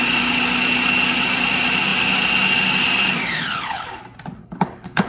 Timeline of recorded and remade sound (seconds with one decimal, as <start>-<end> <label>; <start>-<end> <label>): 0.0-3.5 recorded; 3.5-4.0 remade; 4.0-4.4 recorded; 4.4-5.1 remade